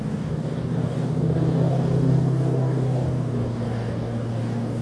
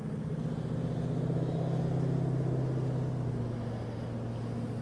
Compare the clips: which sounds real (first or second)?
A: second